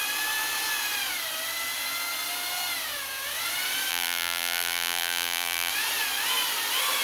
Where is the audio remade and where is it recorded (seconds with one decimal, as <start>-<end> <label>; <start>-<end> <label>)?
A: 0.0-3.9 recorded; 3.9-5.7 remade; 5.7-7.0 recorded